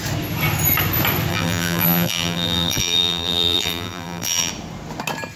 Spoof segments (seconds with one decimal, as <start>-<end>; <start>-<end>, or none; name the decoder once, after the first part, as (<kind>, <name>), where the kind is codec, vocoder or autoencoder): 1.3-4.5 (vocoder, BigVGAN v2)